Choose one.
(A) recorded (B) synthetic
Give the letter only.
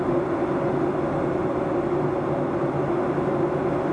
A